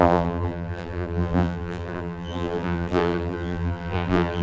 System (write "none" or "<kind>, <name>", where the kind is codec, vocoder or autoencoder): vocoder, BigVGAN v2